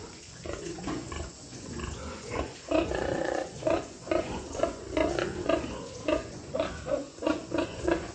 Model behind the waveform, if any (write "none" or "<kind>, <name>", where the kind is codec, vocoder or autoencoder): vocoder, Vocos